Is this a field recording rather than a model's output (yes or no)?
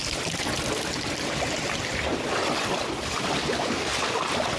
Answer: yes